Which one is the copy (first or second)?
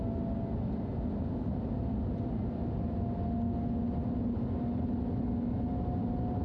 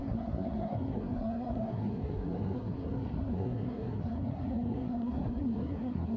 second